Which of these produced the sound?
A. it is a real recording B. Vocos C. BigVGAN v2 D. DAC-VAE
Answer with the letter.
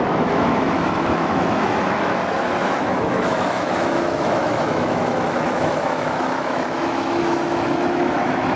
D